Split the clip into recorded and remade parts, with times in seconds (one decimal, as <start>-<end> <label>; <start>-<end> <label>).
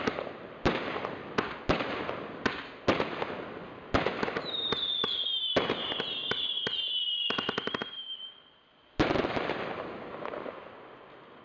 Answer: 0.0-11.4 recorded